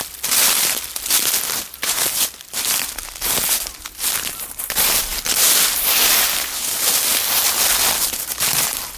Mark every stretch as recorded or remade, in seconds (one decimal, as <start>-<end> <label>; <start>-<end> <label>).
0.0-9.0 recorded

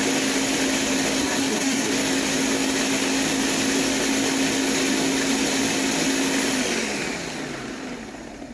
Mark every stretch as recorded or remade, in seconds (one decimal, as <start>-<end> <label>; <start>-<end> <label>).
0.0-1.2 recorded; 1.2-1.9 remade; 1.9-8.5 recorded